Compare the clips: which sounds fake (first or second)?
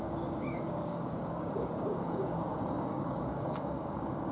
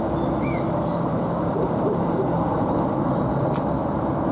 first